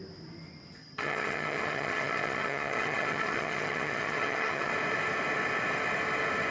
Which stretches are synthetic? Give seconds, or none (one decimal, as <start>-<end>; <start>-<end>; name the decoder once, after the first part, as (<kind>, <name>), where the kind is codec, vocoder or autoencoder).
0.8-4.7 (vocoder, HiFi-GAN)